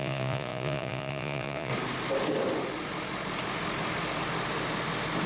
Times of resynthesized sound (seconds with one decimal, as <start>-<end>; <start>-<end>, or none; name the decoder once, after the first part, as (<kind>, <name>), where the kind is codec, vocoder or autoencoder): 0.0-1.7 (vocoder, Vocos)